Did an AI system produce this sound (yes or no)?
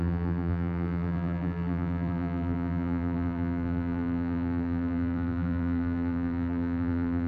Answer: yes